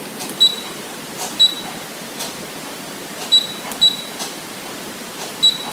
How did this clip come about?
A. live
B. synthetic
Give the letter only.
A